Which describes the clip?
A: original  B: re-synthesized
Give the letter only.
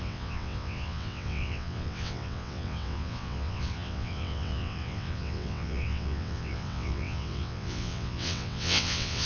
B